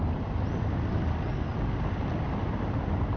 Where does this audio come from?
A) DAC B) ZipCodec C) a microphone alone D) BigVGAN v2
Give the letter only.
C